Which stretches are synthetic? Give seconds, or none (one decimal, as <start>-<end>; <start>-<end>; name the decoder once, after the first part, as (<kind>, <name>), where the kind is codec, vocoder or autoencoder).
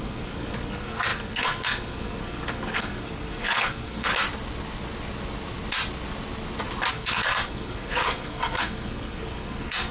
0.0-4.1 (codec, SNAC); 6.9-9.9